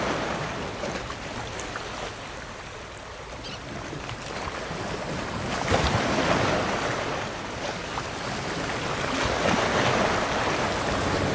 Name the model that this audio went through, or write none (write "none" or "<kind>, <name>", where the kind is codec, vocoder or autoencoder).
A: none